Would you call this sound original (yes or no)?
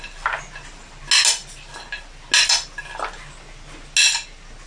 yes